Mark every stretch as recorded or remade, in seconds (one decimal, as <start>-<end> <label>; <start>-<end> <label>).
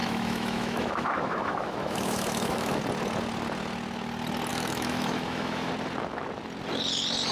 0.0-2.8 remade; 2.8-4.5 recorded; 4.5-5.7 remade; 5.7-7.3 recorded